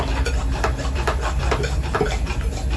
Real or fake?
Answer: real